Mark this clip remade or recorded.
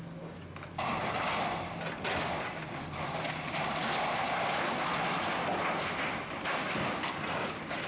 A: recorded